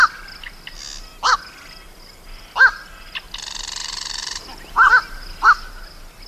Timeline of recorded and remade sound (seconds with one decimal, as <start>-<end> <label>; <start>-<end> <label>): 0.0-3.8 recorded; 3.8-4.9 remade; 4.9-6.3 recorded